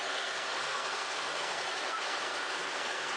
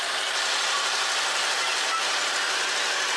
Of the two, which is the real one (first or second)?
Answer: second